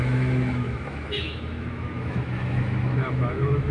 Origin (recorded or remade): remade